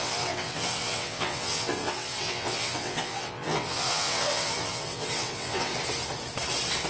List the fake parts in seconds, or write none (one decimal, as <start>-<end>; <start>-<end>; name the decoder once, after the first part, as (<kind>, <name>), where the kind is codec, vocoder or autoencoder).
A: 0.0-5.7 (vocoder, WaveNeXt)